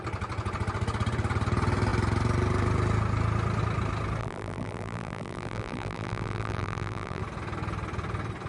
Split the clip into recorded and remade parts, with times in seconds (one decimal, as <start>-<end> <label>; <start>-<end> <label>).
0.0-4.2 recorded; 4.2-7.2 remade; 7.2-8.5 recorded